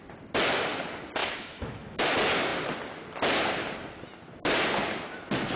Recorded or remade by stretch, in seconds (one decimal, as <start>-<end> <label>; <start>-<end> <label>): 0.0-1.2 recorded; 1.2-2.0 remade; 2.0-5.6 recorded